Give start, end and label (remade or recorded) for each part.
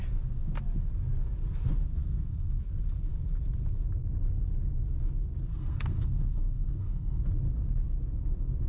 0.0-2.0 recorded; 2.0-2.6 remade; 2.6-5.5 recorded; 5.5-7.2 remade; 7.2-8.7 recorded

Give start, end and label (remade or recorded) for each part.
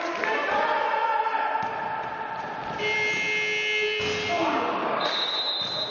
0.0-4.8 recorded; 4.8-5.3 remade; 5.3-5.9 recorded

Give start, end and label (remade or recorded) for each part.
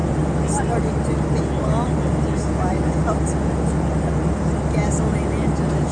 0.0-5.9 recorded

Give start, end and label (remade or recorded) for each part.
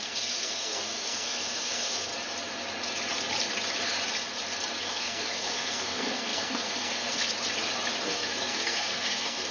0.0-2.1 remade; 2.1-4.8 recorded; 4.8-7.2 remade; 7.2-8.0 recorded; 8.0-9.5 remade